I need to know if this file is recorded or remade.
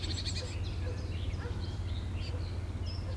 recorded